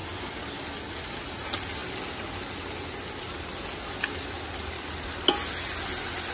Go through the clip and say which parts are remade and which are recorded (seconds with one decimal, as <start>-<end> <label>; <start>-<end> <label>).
0.0-6.3 recorded